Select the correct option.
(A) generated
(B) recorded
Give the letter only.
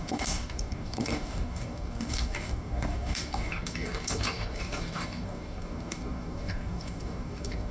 A